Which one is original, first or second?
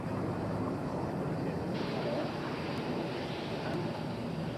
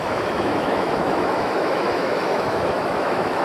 first